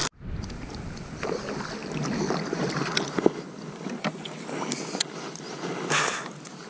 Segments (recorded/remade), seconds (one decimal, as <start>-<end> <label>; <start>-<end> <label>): 0.0-6.7 recorded